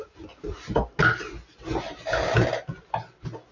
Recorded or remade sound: recorded